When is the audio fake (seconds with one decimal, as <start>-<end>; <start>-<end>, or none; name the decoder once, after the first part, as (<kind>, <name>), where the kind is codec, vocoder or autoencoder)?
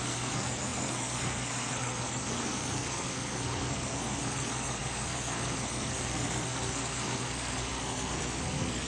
0.0-8.9 (codec, SNAC)